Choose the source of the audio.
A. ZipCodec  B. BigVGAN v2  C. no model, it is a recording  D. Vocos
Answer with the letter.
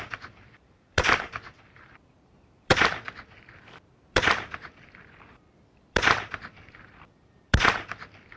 B